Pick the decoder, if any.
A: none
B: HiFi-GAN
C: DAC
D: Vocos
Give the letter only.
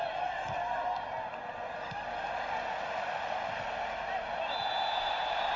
A